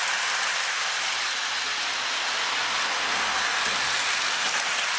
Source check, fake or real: real